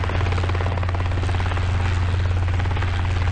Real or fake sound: real